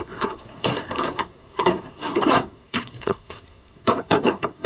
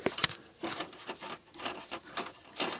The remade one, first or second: first